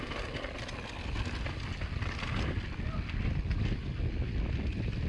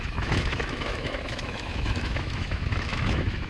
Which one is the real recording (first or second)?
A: first